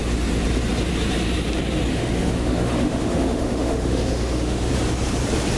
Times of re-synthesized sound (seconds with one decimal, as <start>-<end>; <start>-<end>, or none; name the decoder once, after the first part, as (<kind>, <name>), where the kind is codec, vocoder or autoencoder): 1.9-4.7 (autoencoder, DAC-VAE)

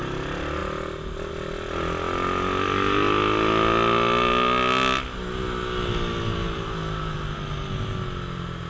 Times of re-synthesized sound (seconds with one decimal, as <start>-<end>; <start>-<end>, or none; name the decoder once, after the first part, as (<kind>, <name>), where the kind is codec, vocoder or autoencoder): none

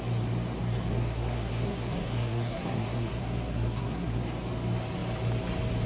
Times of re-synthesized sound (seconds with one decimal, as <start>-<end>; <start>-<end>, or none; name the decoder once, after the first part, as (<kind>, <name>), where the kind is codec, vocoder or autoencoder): 0.9-4.2 (codec, SNAC)

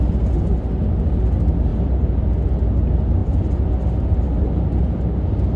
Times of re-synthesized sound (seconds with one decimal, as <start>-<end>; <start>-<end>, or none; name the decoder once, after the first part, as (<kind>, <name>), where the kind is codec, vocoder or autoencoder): 1.7-2.2 (vocoder, BigVGAN v2)

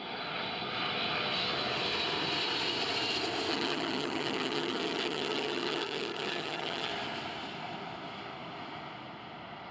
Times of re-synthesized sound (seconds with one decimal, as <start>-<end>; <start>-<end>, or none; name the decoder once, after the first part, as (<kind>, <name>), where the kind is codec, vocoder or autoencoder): 3.5-6.9 (vocoder, HiFi-GAN)

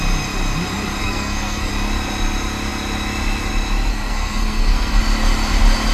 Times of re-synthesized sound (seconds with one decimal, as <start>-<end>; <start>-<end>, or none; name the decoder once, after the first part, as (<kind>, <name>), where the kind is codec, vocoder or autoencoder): 1.0-1.7 (codec, SNAC); 3.9-5.0

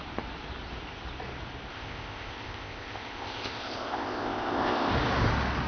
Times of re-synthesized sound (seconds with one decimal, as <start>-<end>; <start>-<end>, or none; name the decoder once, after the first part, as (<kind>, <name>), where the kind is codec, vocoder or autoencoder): 1.7-4.9 (codec, ZipCodec)

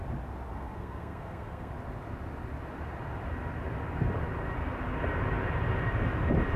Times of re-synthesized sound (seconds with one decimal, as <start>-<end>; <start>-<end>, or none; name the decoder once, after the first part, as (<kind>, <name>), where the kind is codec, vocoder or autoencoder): 0.5-1.7 (codec, SNAC)